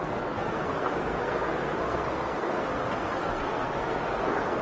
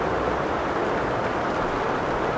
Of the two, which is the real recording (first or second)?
second